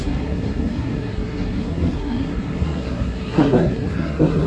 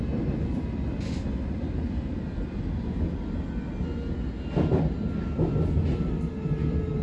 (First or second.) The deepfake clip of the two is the first